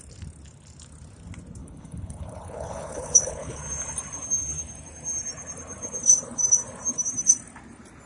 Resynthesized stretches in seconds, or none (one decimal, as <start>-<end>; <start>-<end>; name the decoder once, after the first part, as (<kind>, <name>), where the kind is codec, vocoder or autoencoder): 1.6-3.6 (codec, HILCodec)